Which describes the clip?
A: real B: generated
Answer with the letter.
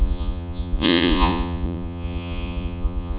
B